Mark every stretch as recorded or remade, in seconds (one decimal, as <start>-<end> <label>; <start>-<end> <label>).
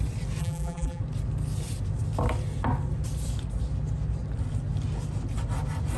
0.0-0.4 recorded; 0.4-1.0 remade; 1.0-6.0 recorded